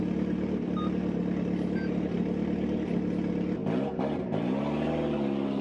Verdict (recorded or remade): recorded